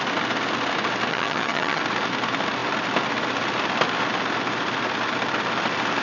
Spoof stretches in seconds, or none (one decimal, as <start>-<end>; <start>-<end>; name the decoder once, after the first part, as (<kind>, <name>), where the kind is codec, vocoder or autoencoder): 1.1-1.8 (vocoder, HiFi-GAN)